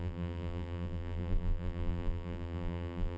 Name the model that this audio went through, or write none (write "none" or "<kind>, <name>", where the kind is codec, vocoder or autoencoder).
vocoder, BigVGAN v2